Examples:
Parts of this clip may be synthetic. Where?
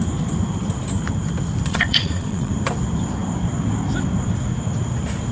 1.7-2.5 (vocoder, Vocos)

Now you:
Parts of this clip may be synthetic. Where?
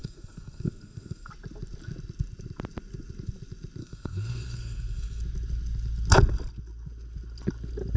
0.0-1.3 (codec, SNAC); 3.8-5.2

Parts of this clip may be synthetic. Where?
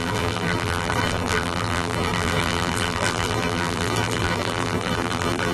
0.0-5.5 (vocoder, BigVGAN v2)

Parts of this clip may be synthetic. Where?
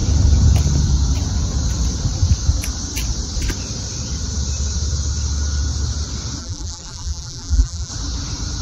6.4-7.9 (vocoder, BigVGAN v2)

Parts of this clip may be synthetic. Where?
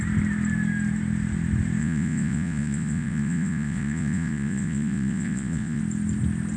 1.8-5.8 (vocoder, Vocos)